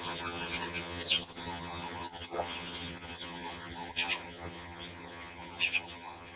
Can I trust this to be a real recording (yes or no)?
no